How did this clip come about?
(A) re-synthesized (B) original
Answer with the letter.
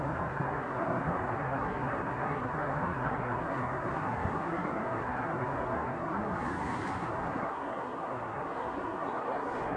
A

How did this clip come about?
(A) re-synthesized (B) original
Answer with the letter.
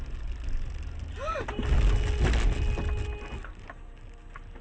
B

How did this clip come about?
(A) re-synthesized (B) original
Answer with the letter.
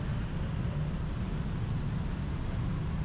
B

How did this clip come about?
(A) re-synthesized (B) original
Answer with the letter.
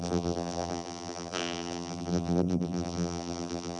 A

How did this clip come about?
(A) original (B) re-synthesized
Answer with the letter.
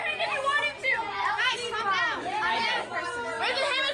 A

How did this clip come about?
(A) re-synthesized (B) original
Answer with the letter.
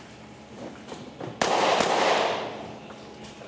B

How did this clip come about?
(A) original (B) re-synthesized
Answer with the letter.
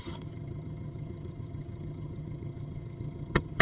B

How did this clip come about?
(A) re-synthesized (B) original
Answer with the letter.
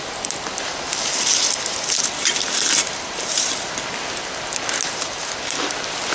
B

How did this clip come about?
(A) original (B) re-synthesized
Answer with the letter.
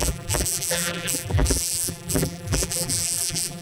B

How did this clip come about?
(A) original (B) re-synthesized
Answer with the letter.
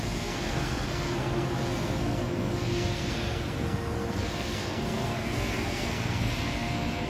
B